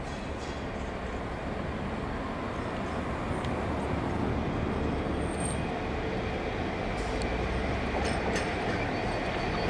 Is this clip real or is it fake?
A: real